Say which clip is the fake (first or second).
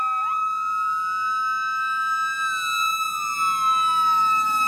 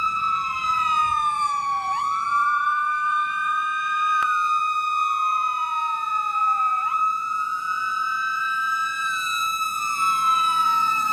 second